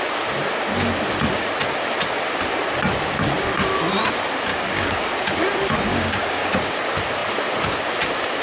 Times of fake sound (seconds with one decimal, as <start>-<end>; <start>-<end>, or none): 4.5-5.0; 5.9-6.5